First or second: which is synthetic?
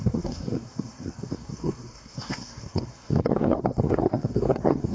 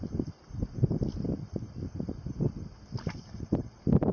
first